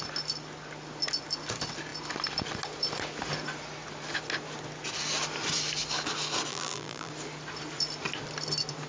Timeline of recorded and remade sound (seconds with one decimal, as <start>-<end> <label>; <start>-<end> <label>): 0.0-6.5 recorded; 6.5-7.1 remade; 7.1-8.9 recorded